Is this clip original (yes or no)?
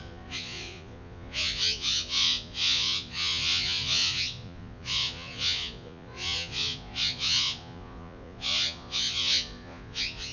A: no